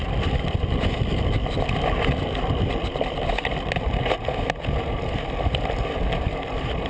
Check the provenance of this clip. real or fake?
real